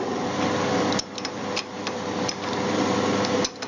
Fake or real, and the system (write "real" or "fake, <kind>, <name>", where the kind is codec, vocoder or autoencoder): real